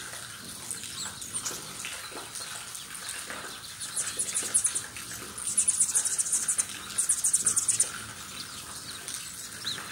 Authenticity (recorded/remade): recorded